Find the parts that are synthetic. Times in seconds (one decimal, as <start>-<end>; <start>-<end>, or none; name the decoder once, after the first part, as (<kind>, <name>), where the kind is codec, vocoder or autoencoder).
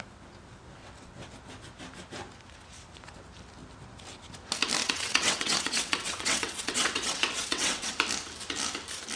0.8-1.3 (vocoder, WaveNeXt); 4.8-7.9